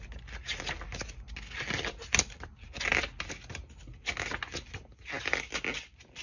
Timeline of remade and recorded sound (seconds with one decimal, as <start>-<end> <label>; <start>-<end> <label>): 0.0-6.2 recorded